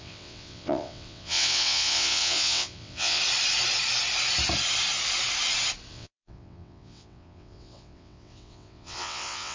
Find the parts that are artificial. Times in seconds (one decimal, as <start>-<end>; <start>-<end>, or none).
0.0-3.2; 5.9-9.5